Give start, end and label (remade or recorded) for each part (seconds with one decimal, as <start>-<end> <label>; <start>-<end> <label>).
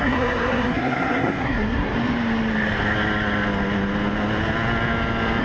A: 0.0-1.9 remade; 1.9-5.4 recorded